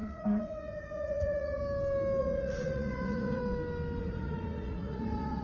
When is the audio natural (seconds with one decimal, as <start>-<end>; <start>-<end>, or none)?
1.6-2.2; 3.4-4.0